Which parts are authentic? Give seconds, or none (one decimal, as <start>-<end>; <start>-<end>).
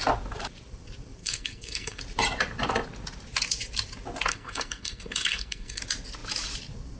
0.0-1.2; 2.0-4.3; 5.8-7.0